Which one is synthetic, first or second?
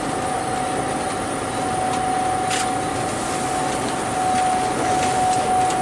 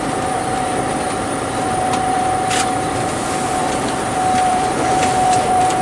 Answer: second